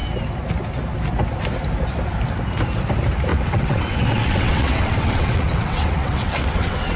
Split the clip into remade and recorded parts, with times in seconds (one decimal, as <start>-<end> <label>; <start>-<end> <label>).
0.0-3.3 recorded; 3.3-7.0 remade